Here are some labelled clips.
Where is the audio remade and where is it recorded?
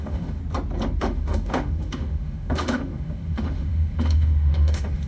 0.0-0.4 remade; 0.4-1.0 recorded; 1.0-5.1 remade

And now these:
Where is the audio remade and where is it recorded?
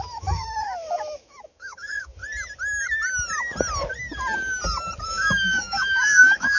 0.0-2.2 remade; 2.2-5.1 recorded; 5.1-6.6 remade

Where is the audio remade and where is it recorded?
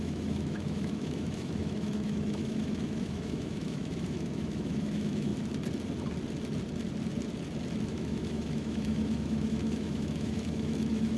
0.0-5.3 remade; 5.3-7.9 recorded; 7.9-11.2 remade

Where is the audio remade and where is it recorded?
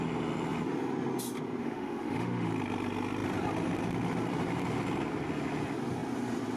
0.0-1.6 recorded; 1.6-2.5 remade; 2.5-6.6 recorded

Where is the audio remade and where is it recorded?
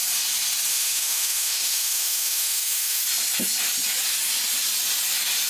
0.0-0.7 recorded; 0.7-3.0 remade; 3.0-5.5 recorded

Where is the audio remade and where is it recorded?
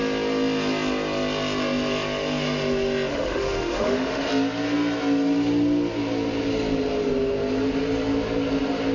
0.0-3.1 recorded; 3.1-4.3 remade; 4.3-8.9 recorded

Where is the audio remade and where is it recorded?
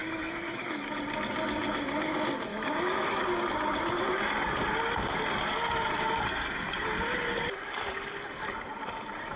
0.0-1.0 remade; 1.0-2.5 recorded; 2.5-3.2 remade; 3.2-9.4 recorded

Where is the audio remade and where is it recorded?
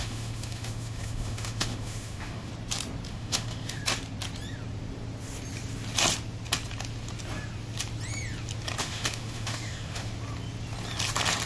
0.0-2.5 remade; 2.5-3.1 recorded; 3.1-3.8 remade; 3.8-8.8 recorded; 8.8-10.1 remade; 10.1-11.5 recorded